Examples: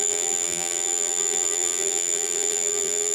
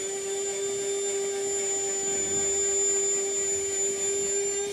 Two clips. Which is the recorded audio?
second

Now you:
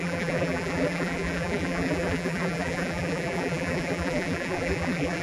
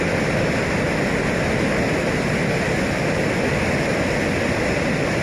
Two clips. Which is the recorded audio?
second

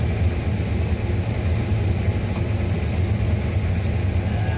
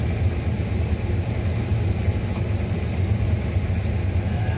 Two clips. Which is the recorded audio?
first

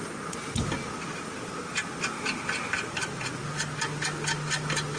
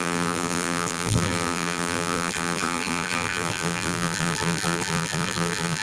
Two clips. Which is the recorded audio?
first